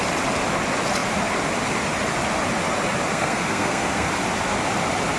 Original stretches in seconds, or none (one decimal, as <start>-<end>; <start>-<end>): 0.0-3.1; 4.1-5.2